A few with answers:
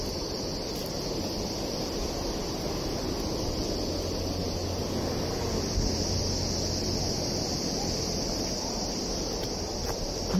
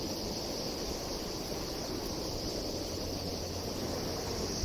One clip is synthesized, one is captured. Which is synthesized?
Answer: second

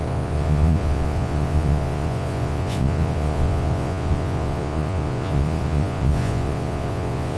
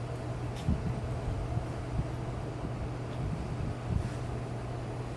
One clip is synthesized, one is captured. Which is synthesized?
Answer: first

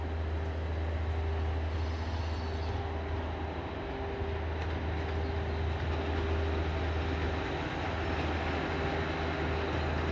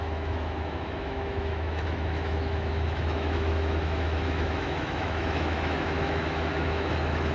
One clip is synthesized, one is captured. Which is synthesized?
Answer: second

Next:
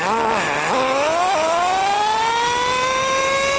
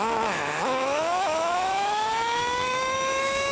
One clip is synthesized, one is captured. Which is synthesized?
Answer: second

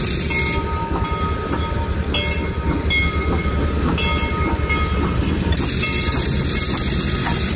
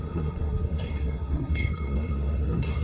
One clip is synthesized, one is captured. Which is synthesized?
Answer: second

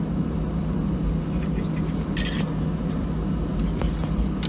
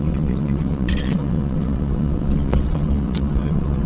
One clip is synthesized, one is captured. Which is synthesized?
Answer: second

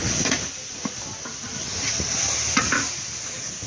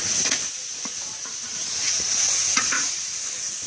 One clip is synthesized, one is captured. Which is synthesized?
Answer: second